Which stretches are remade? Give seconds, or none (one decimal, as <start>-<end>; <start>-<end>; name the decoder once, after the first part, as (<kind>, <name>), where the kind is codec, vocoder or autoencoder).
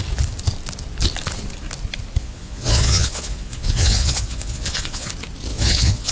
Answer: 2.2-5.1 (vocoder, Vocos); 5.5-6.1